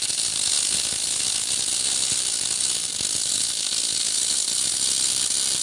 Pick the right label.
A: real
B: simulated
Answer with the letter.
A